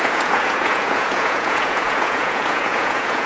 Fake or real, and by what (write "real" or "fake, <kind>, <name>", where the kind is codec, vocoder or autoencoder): fake, vocoder, Vocos